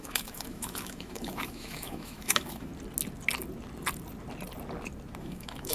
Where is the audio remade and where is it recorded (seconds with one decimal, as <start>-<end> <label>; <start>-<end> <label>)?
0.0-2.7 remade; 2.7-5.2 recorded; 5.2-5.7 remade